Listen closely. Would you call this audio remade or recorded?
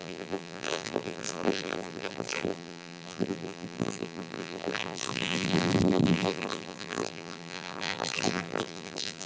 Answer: remade